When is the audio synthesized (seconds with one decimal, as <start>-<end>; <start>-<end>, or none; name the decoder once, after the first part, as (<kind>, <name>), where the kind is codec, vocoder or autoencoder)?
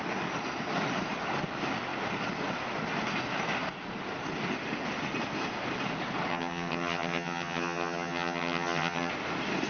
6.3-9.1 (vocoder, HiFi-GAN)